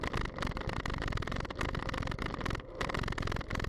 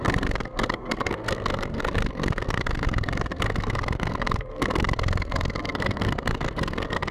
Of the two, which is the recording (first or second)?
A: first